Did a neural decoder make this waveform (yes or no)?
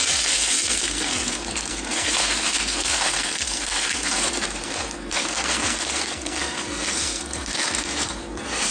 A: yes